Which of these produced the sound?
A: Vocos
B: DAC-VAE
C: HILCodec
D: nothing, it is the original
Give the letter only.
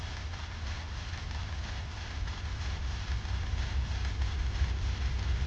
D